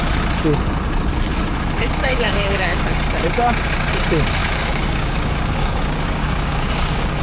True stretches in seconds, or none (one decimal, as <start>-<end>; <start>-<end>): 0.0-2.0; 2.8-4.4